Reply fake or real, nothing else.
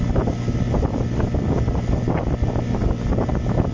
real